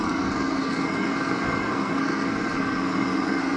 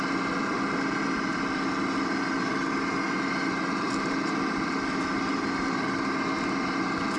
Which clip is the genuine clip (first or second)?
second